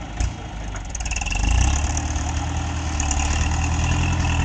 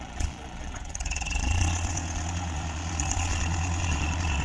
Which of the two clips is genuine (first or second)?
first